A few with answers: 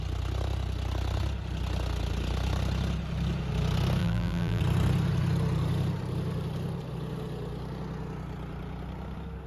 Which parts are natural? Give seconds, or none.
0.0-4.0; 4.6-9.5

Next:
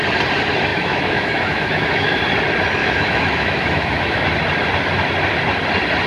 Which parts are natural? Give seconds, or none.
0.0-0.7; 2.2-2.8; 4.3-6.1

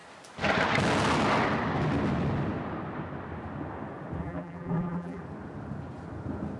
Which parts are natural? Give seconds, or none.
0.0-4.2; 5.2-6.6

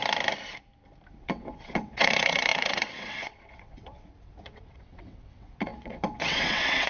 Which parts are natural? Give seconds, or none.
0.0-1.2